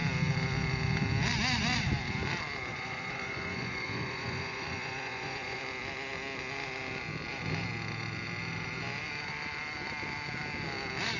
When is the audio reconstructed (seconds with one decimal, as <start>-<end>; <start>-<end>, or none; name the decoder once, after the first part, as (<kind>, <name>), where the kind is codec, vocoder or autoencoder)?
2.7-5.6 (vocoder, Vocos)